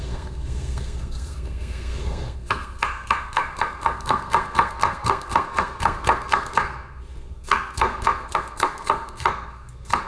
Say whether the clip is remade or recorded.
remade